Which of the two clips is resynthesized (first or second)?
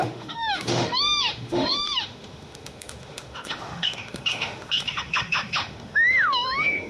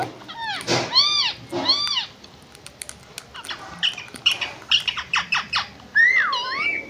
first